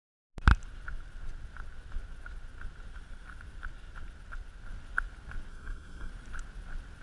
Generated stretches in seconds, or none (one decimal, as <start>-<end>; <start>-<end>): 5.5-6.1